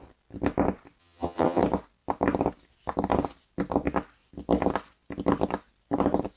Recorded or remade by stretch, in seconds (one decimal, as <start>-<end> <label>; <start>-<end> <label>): 0.0-1.0 recorded; 1.0-1.6 remade; 1.6-6.4 recorded